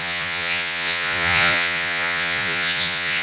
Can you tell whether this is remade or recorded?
remade